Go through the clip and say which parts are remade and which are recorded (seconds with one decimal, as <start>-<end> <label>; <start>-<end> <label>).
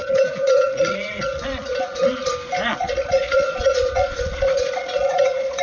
0.0-2.3 remade; 2.3-2.7 recorded; 2.7-5.6 remade